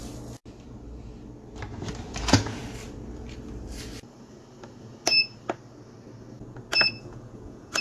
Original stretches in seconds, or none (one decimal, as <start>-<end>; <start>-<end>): 0.0-2.2; 2.6-6.8